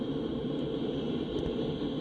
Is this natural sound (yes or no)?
yes